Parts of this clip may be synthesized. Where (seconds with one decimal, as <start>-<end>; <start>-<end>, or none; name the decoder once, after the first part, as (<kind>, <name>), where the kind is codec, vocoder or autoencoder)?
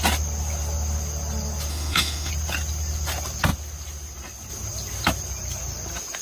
1.7-2.3 (autoencoder, DAC-VAE)